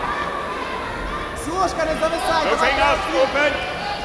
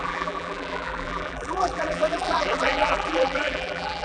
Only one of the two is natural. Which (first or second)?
first